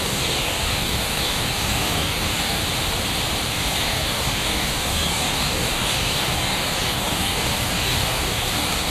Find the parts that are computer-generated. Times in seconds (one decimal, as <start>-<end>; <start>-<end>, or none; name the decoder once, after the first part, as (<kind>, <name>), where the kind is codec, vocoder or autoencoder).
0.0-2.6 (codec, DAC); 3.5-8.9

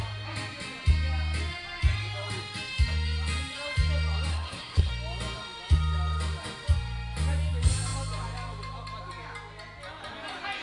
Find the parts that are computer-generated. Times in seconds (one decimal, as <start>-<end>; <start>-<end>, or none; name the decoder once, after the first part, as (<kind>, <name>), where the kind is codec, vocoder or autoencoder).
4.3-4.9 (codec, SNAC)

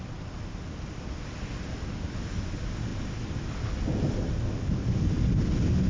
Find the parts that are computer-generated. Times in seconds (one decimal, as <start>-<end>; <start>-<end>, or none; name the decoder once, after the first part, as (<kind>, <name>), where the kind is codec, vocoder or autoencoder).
none

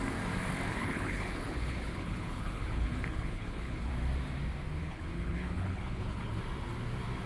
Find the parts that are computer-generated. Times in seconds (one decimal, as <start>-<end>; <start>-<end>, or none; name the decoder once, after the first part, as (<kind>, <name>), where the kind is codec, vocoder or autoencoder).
0.7-3.9 (codec, HILCodec); 4.8-6.4